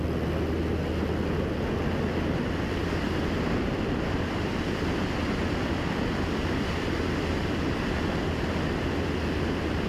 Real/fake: real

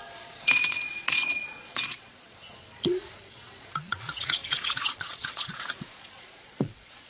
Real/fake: fake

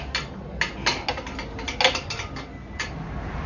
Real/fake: real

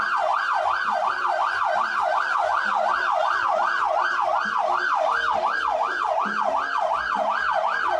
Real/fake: real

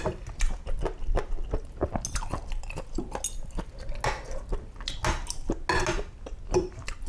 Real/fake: real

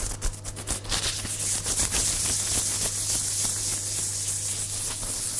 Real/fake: real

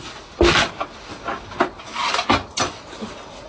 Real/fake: real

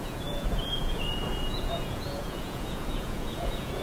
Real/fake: fake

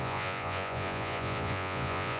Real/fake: fake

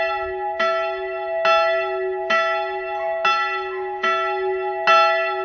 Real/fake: real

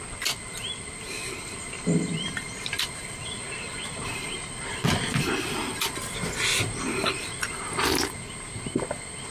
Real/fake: real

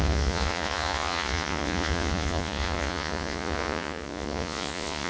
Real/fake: fake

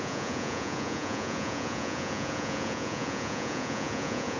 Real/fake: fake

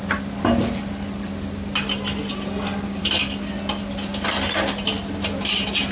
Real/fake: real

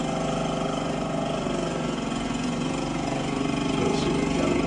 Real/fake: fake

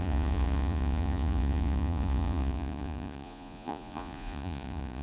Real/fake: fake